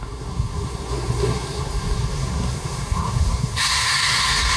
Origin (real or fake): fake